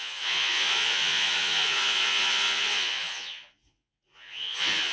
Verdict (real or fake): fake